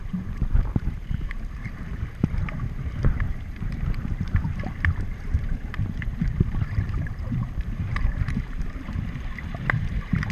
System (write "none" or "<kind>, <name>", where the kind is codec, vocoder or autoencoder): vocoder, BigVGAN v2